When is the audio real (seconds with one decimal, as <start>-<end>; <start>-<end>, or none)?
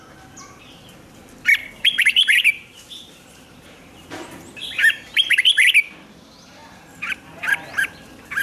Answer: 0.0-1.6; 5.4-6.6; 7.9-8.4